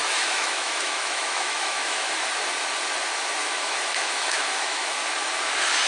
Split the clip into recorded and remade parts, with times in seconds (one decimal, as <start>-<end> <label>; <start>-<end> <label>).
0.0-2.3 remade; 2.3-3.4 recorded; 3.4-5.0 remade; 5.0-5.9 recorded